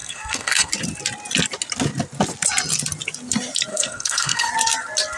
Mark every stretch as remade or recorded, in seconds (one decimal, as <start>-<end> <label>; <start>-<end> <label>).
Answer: 0.0-0.7 remade; 0.7-3.7 recorded; 3.7-4.5 remade; 4.5-5.2 recorded